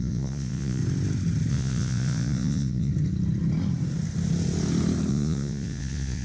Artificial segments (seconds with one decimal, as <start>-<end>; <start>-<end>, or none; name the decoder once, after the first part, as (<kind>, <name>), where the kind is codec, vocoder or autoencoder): 0.0-0.8 (vocoder, Vocos); 1.5-2.9; 5.1-6.2